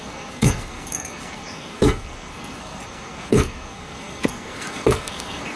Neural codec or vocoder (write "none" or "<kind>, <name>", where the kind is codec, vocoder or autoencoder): codec, SNAC